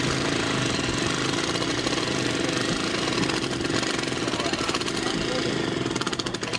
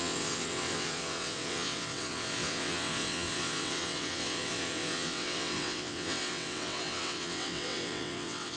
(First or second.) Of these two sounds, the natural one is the first